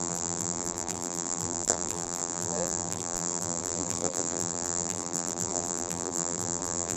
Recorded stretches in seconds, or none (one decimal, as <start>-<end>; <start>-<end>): none

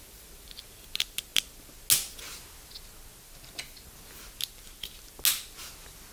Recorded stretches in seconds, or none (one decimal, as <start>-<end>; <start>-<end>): 0.0-6.1

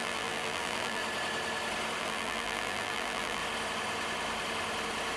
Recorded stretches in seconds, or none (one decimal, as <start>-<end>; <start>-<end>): 1.0-2.0; 3.4-5.2

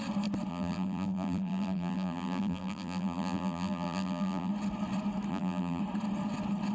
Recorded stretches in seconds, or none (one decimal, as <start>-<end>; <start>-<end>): 0.0-0.5; 4.5-5.3; 5.8-6.7

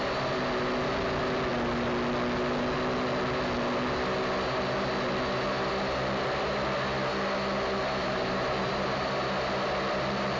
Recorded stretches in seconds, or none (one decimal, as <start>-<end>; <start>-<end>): 0.0-8.0; 9.1-10.4

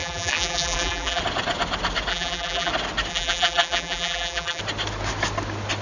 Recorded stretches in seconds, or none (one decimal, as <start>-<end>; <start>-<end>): 1.2-2.1; 2.7-3.1; 4.6-5.8

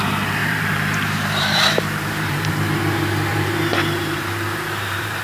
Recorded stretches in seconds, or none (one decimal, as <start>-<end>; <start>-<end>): 0.0-0.4; 2.5-3.3

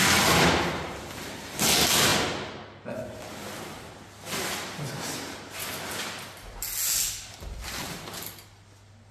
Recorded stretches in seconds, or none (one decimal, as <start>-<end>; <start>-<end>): 2.1-7.3